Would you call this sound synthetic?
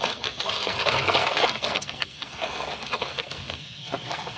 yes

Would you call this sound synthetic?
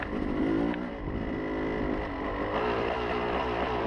no